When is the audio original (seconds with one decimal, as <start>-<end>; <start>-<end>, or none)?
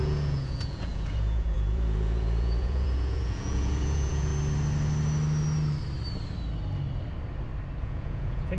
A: 4.3-7.8